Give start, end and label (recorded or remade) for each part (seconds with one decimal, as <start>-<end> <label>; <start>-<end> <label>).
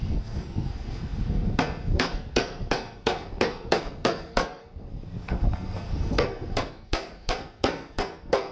0.0-8.5 remade